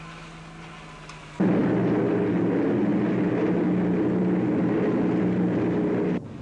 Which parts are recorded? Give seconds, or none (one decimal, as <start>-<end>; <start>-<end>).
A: 0.0-6.4